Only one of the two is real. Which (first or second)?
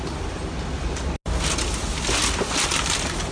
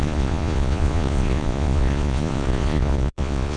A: first